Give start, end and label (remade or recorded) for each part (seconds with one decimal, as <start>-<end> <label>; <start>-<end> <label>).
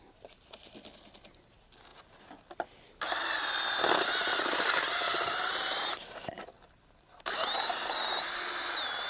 0.0-9.1 recorded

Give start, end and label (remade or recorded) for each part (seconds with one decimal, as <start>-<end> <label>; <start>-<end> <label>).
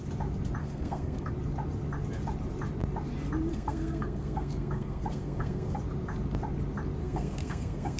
0.0-0.6 recorded; 0.6-1.3 remade; 1.3-3.5 recorded; 3.5-5.8 remade; 5.8-7.0 recorded; 7.0-8.0 remade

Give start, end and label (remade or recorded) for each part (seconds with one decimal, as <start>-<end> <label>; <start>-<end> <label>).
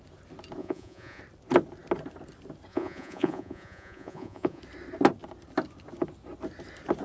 0.0-0.6 recorded; 0.6-1.2 remade; 1.2-2.7 recorded; 2.7-4.6 remade; 4.6-7.0 recorded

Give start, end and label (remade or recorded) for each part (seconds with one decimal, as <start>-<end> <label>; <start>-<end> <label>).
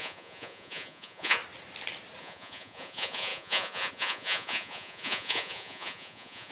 0.0-1.4 remade; 1.4-2.2 recorded; 2.2-6.5 remade